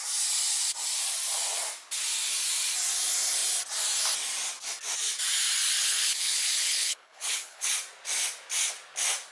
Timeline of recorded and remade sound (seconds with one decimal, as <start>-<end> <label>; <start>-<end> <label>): 0.0-5.8 recorded; 5.8-7.7 remade; 7.7-9.3 recorded

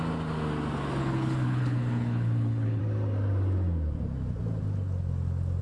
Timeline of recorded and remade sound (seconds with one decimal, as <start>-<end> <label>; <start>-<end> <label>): 0.0-1.0 recorded; 1.0-2.8 remade; 2.8-5.6 recorded